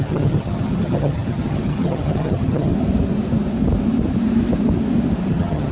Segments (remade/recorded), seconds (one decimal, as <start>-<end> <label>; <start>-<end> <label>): 0.0-2.7 remade; 2.7-5.3 recorded; 5.3-5.7 remade